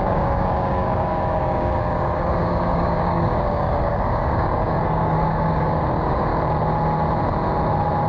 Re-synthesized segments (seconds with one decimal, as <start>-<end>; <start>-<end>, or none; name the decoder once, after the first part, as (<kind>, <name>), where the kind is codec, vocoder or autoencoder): 0.0-6.3 (codec, DAC)

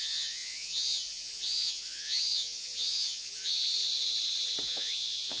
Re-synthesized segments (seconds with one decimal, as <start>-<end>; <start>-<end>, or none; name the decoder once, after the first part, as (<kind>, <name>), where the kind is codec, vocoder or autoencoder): 0.0-3.7 (vocoder, Vocos); 4.6-5.4

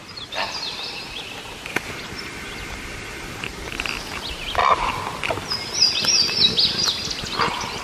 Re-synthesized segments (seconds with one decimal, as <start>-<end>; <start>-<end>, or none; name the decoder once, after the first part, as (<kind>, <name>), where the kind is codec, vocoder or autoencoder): 4.6-5.4 (vocoder, BigVGAN v2)

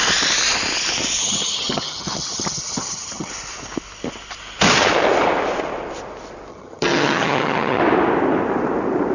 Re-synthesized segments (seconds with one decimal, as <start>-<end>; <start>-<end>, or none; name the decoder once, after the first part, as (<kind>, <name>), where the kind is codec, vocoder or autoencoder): 1.2-3.3 (vocoder, HiFi-GAN); 6.5-7.8